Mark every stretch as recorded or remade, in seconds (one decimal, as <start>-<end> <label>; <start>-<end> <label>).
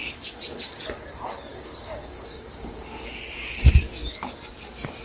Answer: 0.0-5.0 remade